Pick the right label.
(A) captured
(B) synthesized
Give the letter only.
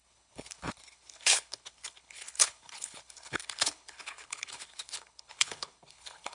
B